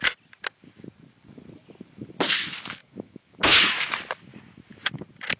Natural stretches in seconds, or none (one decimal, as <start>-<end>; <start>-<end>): 0.0-2.8; 3.9-4.3; 5.0-5.4